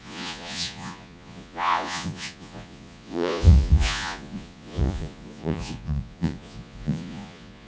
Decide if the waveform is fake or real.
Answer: fake